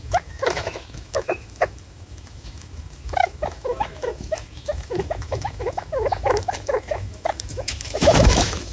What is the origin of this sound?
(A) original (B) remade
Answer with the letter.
B